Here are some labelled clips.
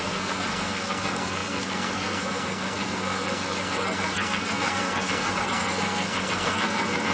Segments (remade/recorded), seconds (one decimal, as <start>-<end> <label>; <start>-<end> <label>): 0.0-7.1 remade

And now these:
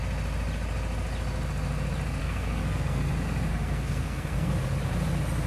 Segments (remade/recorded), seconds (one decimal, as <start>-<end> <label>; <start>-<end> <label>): 0.0-2.2 recorded; 2.2-3.1 remade; 3.1-3.5 recorded; 3.5-4.5 remade; 4.5-5.5 recorded

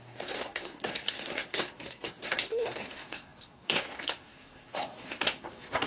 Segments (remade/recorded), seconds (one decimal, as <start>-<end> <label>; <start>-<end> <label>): 0.0-5.9 remade

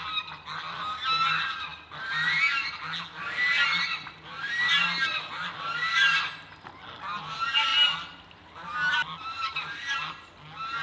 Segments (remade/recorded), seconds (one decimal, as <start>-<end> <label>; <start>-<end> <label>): 0.0-10.8 recorded

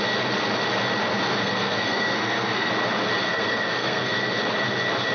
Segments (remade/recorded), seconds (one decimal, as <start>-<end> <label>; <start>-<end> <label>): 0.0-1.3 recorded; 1.3-2.7 remade; 2.7-3.3 recorded; 3.3-4.4 remade; 4.4-5.1 recorded

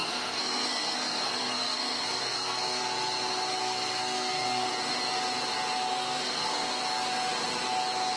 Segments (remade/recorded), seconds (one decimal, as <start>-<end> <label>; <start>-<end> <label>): 0.0-2.8 remade; 2.8-3.6 recorded; 3.6-4.7 remade; 4.7-5.9 recorded; 5.9-6.8 remade; 6.8-8.2 recorded

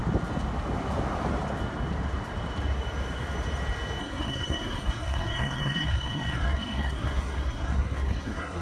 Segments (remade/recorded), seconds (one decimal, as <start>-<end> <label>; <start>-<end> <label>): 0.0-4.0 recorded; 4.0-8.6 remade

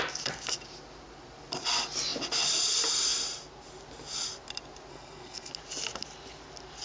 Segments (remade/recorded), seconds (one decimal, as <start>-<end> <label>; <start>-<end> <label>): 0.0-4.9 recorded; 4.9-5.5 remade; 5.5-6.8 recorded